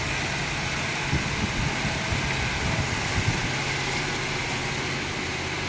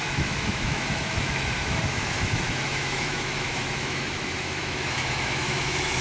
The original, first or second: first